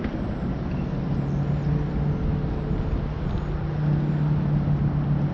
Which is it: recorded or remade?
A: recorded